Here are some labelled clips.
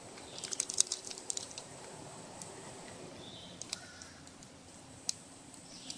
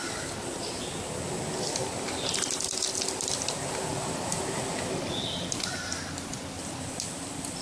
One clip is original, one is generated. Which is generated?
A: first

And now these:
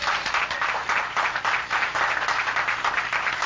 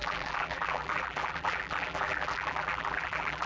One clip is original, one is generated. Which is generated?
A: second